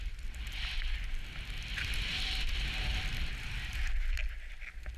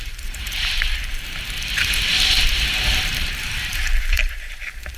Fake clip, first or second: second